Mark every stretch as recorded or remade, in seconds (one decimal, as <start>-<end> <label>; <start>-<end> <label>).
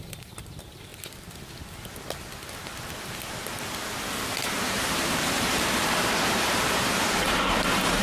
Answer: 0.0-0.9 remade; 0.9-4.4 recorded; 4.4-8.0 remade